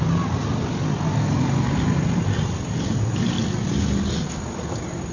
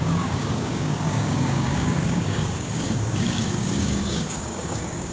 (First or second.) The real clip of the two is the first